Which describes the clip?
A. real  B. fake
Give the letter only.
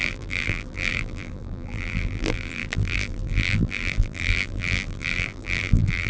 B